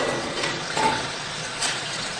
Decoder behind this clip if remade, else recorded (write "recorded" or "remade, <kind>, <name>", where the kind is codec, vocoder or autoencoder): remade, vocoder, Vocos